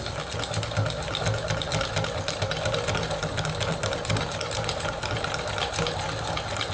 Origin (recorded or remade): recorded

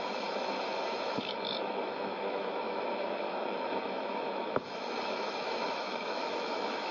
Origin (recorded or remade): remade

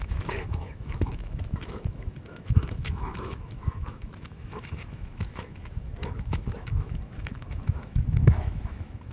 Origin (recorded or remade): remade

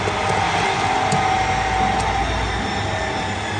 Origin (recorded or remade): recorded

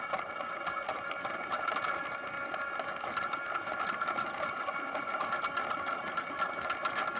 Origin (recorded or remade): recorded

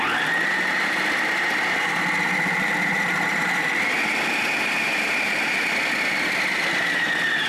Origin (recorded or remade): recorded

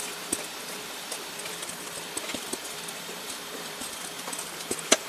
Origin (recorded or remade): recorded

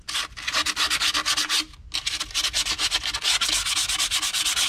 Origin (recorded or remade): recorded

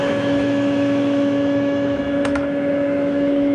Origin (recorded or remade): remade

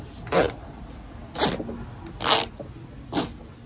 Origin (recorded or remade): recorded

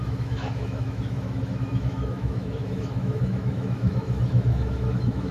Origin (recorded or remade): remade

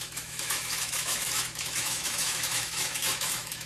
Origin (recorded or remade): remade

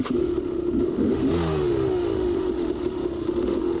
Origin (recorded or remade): remade